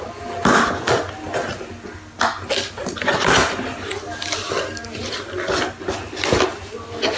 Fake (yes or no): no